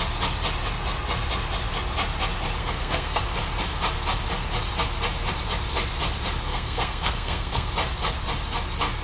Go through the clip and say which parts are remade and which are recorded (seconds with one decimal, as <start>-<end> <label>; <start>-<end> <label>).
0.0-2.6 recorded; 2.6-3.2 remade; 3.2-6.5 recorded; 6.5-7.7 remade; 7.7-9.0 recorded